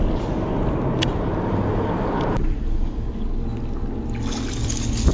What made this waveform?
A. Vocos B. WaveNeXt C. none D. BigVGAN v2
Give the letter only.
C